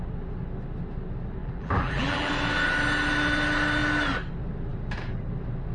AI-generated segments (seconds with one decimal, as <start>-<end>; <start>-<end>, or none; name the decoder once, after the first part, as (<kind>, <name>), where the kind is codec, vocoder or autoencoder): 1.4-2.3 (vocoder, BigVGAN v2)